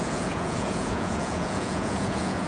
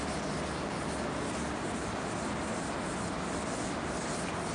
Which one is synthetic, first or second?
first